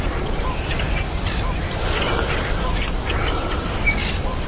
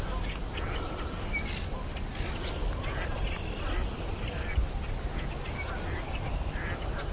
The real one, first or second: second